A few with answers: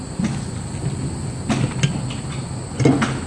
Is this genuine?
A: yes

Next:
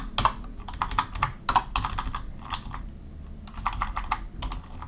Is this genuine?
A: yes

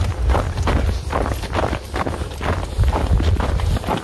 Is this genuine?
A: yes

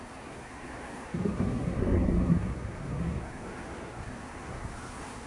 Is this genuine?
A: no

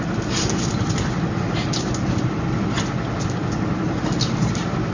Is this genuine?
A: yes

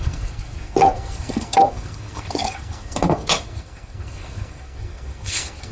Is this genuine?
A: no